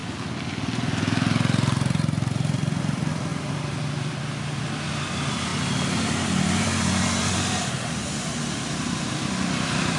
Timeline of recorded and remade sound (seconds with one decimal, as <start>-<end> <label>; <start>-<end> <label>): 0.0-2.8 recorded; 2.8-10.0 remade